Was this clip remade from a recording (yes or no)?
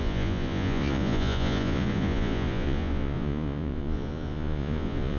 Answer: yes